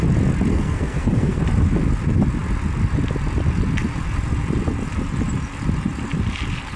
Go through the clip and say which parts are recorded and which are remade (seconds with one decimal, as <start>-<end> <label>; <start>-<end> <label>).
0.0-0.5 recorded; 0.5-1.4 remade; 1.4-6.8 recorded